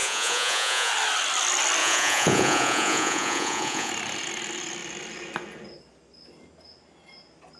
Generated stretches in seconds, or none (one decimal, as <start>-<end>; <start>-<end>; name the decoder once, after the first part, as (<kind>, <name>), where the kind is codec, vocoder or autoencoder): 0.0-0.9 (vocoder, Vocos); 1.8-3.9